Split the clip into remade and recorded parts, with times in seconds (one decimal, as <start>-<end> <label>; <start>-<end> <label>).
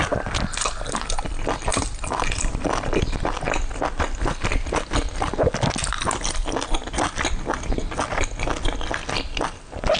0.0-1.7 recorded; 1.7-3.6 remade; 3.6-10.0 recorded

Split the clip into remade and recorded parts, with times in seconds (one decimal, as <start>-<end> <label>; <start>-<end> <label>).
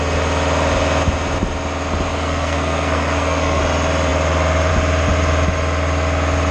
0.0-2.1 recorded; 2.1-3.6 remade; 3.6-6.5 recorded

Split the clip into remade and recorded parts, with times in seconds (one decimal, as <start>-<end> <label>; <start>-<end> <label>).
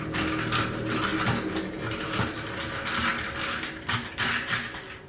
0.0-5.1 recorded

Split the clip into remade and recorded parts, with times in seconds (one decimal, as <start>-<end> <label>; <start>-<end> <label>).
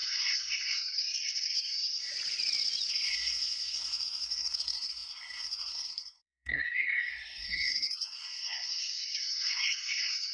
0.0-2.1 remade; 2.1-2.9 recorded; 2.9-10.3 remade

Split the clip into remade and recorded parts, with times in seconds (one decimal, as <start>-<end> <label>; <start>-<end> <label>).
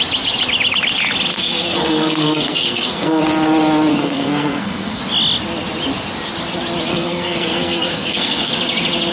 0.0-1.3 recorded; 1.3-3.2 remade; 3.2-3.9 recorded; 3.9-5.0 remade; 5.0-6.9 recorded; 6.9-8.5 remade; 8.5-9.1 recorded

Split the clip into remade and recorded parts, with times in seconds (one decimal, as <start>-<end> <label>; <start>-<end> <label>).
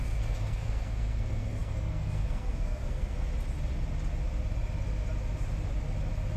0.0-3.3 remade; 3.3-6.4 recorded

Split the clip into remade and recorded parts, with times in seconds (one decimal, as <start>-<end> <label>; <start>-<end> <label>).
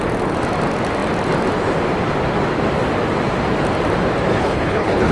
0.0-4.3 recorded; 4.3-5.1 remade